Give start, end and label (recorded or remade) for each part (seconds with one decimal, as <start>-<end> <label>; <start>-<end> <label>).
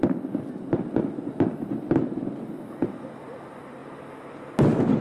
0.0-5.0 recorded